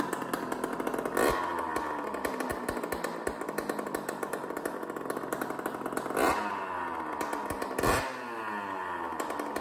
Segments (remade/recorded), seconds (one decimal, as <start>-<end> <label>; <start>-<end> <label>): 0.0-9.6 recorded